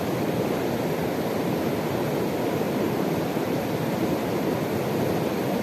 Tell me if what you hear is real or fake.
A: real